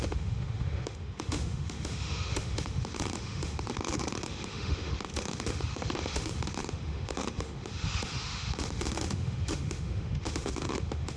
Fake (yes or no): yes